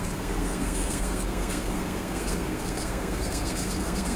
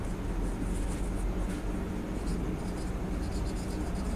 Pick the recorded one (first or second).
second